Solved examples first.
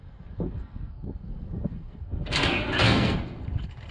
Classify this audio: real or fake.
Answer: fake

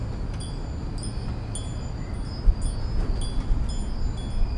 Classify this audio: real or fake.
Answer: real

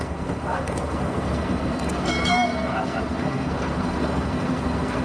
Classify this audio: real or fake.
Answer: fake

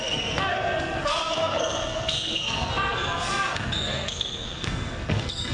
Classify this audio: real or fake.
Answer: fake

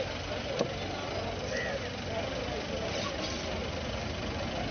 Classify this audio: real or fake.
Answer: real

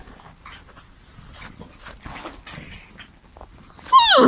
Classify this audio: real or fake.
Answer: real